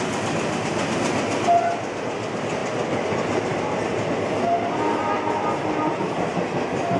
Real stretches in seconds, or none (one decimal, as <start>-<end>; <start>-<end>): 0.0-7.0